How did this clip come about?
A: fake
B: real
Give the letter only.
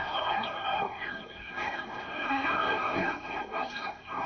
A